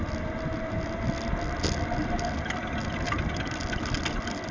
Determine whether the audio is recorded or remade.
recorded